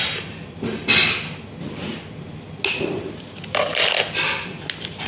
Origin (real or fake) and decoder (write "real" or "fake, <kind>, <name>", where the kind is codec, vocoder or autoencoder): real